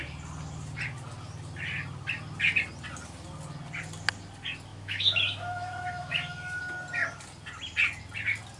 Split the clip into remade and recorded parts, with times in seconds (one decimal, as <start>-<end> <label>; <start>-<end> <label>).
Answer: 0.0-4.7 recorded; 4.7-6.6 remade; 6.6-8.6 recorded

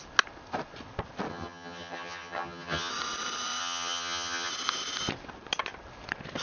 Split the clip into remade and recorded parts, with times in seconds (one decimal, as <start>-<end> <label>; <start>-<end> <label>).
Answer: 0.0-1.3 recorded; 1.3-2.9 remade; 2.9-3.6 recorded; 3.6-4.5 remade; 4.5-6.4 recorded

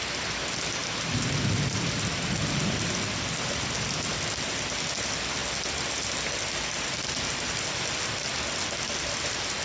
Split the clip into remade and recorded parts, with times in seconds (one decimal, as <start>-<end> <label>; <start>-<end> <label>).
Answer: 0.0-9.6 recorded

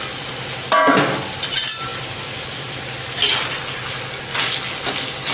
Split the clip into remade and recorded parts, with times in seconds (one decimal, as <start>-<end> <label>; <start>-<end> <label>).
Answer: 0.0-5.3 recorded